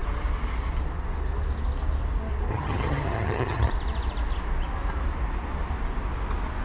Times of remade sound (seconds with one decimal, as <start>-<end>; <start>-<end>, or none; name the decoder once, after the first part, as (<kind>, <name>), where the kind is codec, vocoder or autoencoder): 2.5-3.7 (vocoder, HiFi-GAN)